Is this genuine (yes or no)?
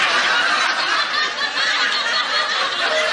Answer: yes